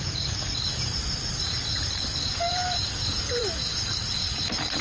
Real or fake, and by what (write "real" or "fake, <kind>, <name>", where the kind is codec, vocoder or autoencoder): fake, vocoder, BigVGAN v2